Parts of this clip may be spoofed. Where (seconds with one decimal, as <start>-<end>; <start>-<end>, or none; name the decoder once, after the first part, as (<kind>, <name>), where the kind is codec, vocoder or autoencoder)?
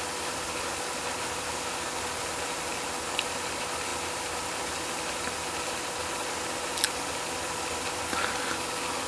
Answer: 3.9-7.1 (vocoder, BigVGAN v2)